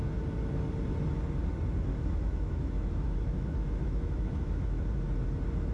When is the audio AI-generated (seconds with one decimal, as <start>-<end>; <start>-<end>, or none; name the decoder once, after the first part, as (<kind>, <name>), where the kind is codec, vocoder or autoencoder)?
1.9-4.8 (autoencoder, DAC-VAE)

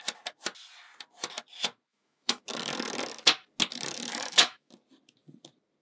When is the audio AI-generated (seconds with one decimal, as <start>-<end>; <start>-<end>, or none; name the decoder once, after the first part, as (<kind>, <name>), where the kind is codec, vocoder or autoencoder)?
1.9-2.4 (autoencoder, DAC-VAE); 4.1-4.7

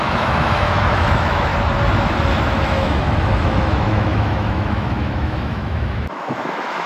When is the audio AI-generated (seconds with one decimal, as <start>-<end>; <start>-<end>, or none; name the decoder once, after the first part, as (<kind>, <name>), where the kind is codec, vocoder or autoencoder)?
0.0-1.5 (autoencoder, DAC-VAE); 2.3-6.9

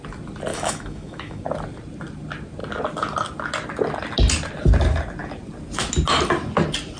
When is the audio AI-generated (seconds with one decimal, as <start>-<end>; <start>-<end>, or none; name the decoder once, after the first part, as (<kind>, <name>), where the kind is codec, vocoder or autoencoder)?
0.5-1.4 (autoencoder, DAC-VAE)

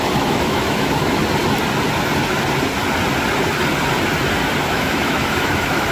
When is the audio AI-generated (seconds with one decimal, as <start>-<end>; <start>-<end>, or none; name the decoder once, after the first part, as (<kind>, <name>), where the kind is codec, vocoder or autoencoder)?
0.0-1.2 (autoencoder, DAC-VAE); 4.7-5.9

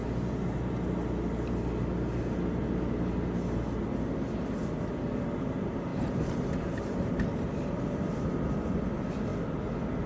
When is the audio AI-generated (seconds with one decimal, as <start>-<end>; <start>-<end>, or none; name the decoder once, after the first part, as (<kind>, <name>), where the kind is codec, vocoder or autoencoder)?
none